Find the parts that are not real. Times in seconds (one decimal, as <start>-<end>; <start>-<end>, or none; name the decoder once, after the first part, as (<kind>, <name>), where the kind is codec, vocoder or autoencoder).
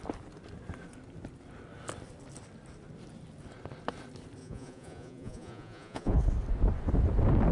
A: 4.4-6.2 (vocoder, Vocos)